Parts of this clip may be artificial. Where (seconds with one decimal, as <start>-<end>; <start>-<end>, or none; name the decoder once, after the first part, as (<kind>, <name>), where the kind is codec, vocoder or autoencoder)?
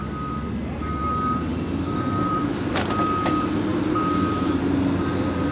1.5-2.7 (vocoder, BigVGAN v2)